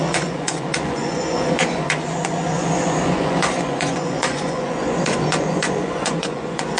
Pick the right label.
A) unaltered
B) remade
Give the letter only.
B